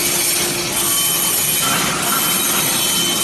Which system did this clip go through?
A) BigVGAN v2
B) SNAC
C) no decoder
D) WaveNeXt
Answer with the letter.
C